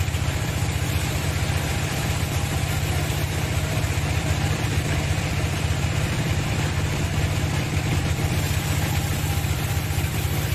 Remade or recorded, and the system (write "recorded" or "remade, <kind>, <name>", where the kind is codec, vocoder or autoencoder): remade, vocoder, BigVGAN v2